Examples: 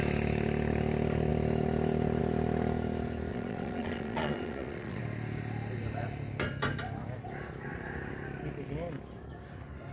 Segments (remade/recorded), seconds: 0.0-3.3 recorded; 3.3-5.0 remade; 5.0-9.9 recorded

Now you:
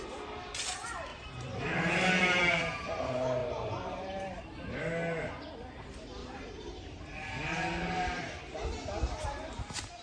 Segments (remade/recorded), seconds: 0.0-1.1 recorded; 1.1-2.4 remade; 2.4-3.4 recorded; 3.4-4.4 remade; 4.4-6.2 recorded; 6.2-8.2 remade; 8.2-10.0 recorded

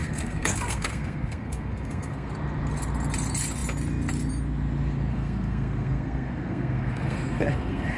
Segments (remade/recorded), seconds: 0.0-2.3 remade; 2.3-5.1 recorded; 5.1-8.0 remade

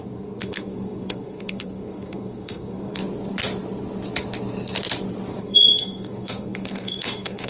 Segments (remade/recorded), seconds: 0.0-3.0 remade; 3.0-5.4 recorded; 5.4-7.5 remade

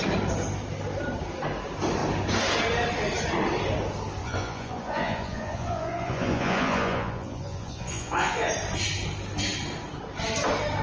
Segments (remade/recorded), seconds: 0.0-4.2 recorded; 4.2-8.5 remade; 8.5-10.8 recorded